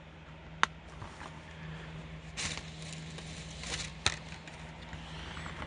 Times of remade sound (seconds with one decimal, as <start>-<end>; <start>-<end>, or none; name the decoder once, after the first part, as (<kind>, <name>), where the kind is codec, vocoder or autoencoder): none